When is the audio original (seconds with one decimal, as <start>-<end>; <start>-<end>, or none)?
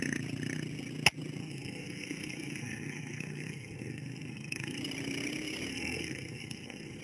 0.0-1.4; 4.8-5.7